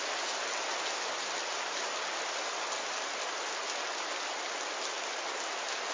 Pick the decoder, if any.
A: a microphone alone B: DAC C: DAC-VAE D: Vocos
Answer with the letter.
A